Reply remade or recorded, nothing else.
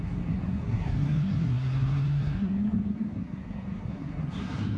remade